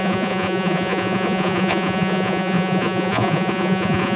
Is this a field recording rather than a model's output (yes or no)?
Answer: no